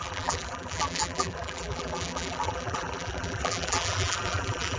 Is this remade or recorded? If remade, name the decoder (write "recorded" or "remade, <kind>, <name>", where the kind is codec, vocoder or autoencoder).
remade, vocoder, BigVGAN v2